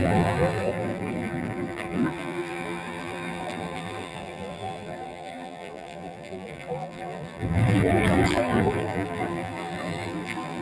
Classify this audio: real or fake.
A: fake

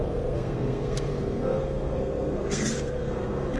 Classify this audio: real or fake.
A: fake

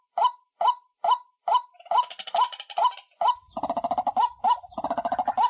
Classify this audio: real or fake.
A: real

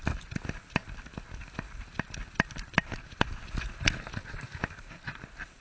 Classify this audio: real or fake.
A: real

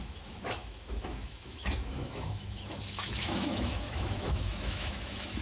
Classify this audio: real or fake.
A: fake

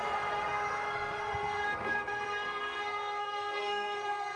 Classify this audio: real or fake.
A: fake